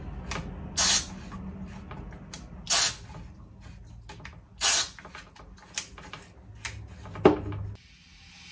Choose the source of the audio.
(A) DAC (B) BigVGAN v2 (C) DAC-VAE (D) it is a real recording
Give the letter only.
D